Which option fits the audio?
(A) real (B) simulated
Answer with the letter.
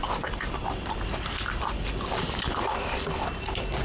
A